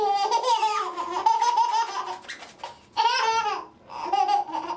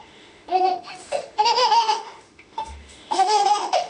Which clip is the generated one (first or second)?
second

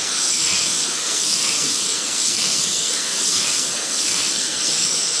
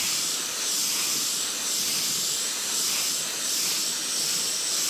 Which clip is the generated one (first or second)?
first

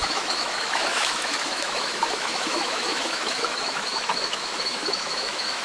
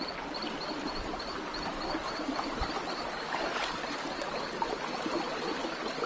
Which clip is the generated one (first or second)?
first